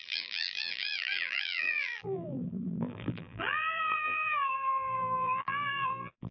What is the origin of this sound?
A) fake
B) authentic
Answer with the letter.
A